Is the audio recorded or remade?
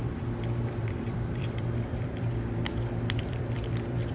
remade